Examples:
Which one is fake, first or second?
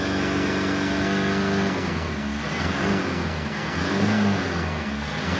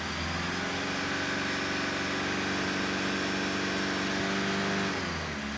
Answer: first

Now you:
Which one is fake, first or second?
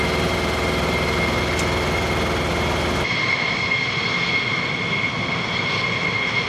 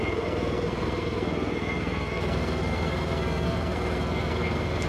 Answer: second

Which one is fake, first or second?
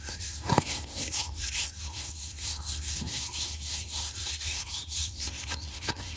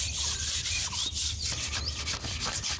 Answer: first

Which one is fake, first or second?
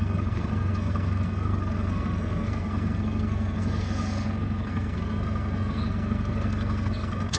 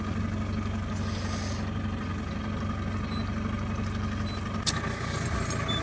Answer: first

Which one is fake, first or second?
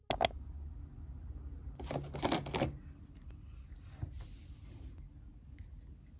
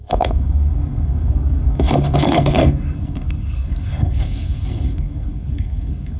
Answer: second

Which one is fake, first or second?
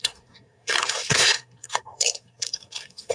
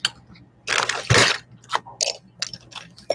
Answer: first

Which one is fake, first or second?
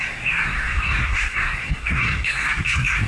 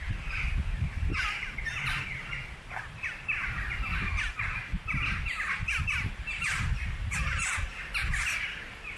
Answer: first